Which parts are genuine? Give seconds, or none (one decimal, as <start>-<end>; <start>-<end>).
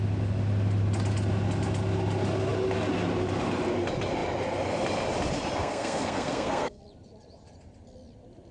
0.0-5.6; 6.8-8.5